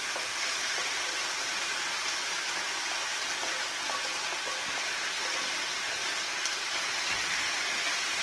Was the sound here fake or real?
real